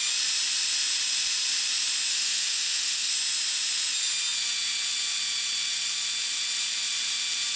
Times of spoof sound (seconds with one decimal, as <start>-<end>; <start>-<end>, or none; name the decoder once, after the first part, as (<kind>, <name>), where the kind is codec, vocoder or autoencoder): 2.1-3.1 (autoencoder, DAC-VAE)